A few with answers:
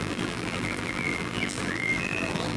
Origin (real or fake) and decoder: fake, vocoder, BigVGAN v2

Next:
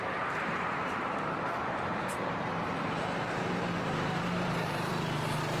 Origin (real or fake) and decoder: fake, vocoder, BigVGAN v2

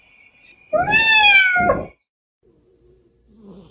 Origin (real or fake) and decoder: real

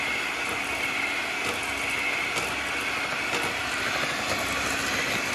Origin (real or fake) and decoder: real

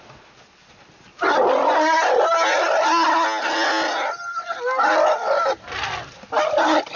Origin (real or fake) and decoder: real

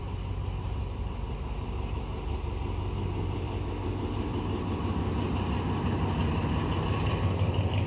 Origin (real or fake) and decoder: real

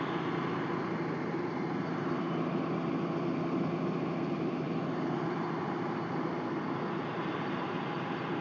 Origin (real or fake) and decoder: real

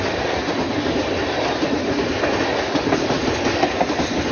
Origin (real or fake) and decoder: real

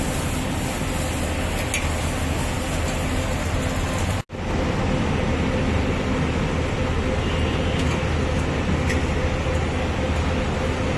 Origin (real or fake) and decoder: real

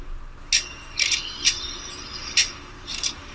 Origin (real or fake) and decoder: real